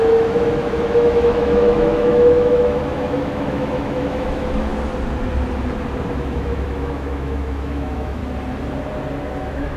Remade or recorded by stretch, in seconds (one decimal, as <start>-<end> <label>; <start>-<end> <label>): 0.0-4.7 remade; 4.7-6.1 recorded; 6.1-8.2 remade; 8.2-9.4 recorded; 9.4-9.8 remade